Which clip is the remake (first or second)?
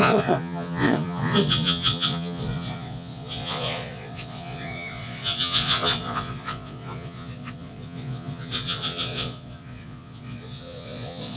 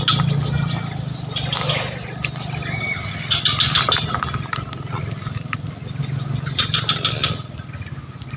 first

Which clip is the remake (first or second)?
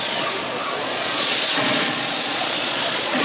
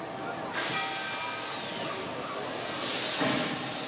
first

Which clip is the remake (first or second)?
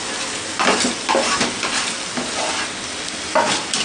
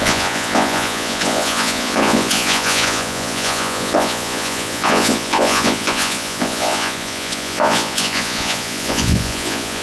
second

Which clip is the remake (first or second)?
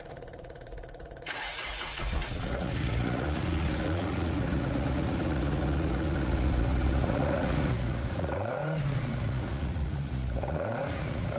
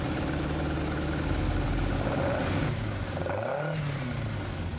first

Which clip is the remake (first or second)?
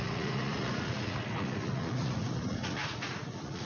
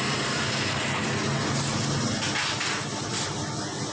first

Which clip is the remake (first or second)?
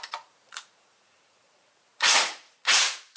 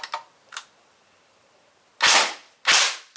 first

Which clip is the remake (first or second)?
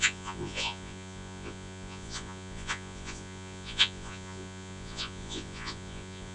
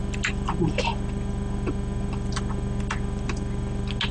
first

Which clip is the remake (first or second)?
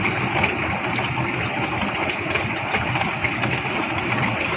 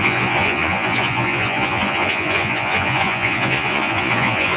second